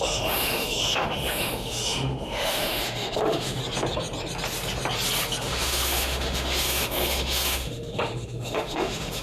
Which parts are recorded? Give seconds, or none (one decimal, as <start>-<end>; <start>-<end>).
3.6-5.4